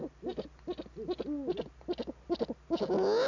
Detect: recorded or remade recorded